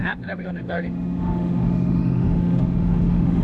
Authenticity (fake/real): fake